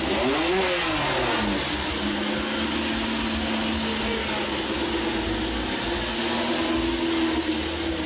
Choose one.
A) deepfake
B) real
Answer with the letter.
B